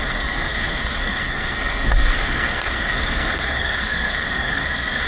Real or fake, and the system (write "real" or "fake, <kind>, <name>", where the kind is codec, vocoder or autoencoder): fake, codec, SNAC